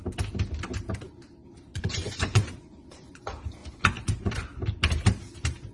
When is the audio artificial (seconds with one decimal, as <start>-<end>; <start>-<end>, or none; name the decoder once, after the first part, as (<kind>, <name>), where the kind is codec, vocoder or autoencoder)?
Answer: 1.7-3.2 (vocoder, Vocos); 3.6-4.3